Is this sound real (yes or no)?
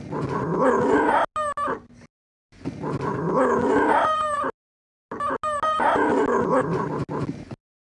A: yes